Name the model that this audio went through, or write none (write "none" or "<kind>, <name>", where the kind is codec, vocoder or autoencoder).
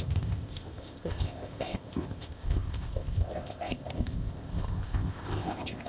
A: codec, ZipCodec